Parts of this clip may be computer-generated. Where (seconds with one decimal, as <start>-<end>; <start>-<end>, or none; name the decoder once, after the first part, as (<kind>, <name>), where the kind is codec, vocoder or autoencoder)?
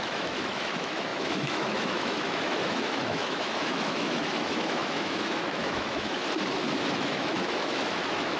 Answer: 0.0-6.2 (autoencoder, DAC-VAE); 6.9-8.4